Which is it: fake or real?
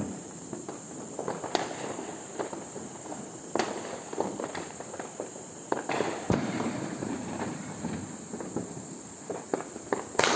fake